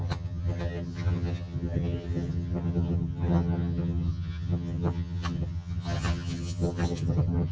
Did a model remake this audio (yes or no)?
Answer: yes